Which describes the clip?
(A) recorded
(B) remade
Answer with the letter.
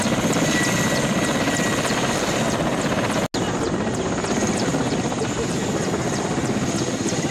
A